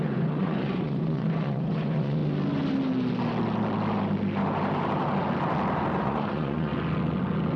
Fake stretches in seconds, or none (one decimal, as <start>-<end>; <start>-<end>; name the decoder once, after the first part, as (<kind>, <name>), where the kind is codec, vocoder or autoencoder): 0.0-2.2 (vocoder, Vocos); 6.0-6.7